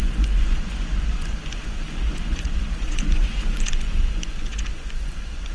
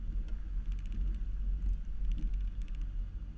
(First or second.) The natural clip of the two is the second